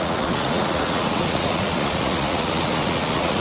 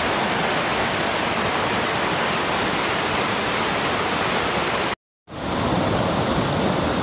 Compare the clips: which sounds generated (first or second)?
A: first